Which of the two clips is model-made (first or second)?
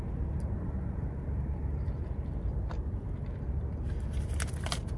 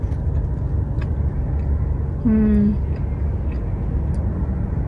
first